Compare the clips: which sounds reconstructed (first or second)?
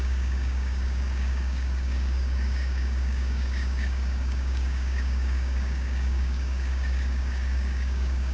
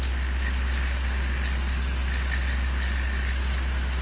first